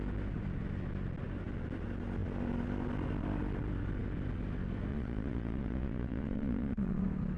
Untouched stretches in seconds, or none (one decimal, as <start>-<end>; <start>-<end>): 0.0-4.9; 7.0-7.4